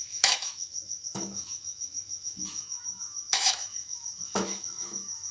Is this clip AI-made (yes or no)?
yes